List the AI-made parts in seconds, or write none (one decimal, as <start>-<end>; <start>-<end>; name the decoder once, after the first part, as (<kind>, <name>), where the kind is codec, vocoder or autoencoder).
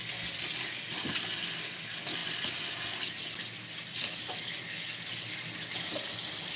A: none